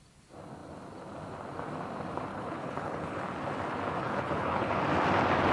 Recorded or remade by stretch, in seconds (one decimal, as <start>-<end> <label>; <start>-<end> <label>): 0.0-2.3 recorded; 2.3-3.2 remade; 3.2-4.0 recorded; 4.0-4.8 remade; 4.8-5.5 recorded